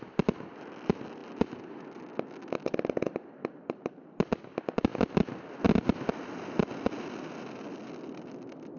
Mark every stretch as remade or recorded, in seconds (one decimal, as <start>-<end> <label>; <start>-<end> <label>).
0.0-8.8 recorded